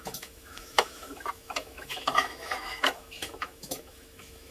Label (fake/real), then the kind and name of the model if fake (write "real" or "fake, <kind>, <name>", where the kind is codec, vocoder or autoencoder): fake, autoencoder, DAC-VAE